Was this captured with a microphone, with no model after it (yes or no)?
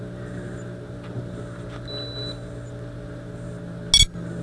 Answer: yes